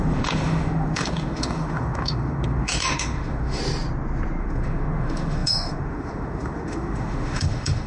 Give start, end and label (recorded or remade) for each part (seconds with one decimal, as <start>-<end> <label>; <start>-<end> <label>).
0.0-3.6 remade; 3.6-4.4 recorded; 4.4-7.9 remade